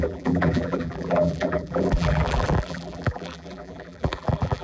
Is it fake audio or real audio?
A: fake